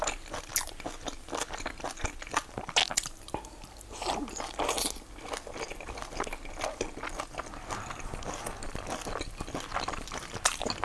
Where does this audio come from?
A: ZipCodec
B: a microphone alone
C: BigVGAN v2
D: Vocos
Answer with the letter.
B